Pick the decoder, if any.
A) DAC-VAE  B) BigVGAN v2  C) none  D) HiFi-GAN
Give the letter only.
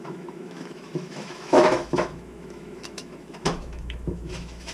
A